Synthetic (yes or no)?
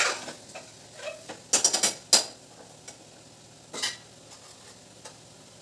no